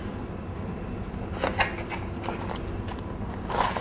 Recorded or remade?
recorded